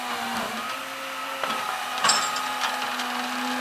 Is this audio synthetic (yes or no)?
no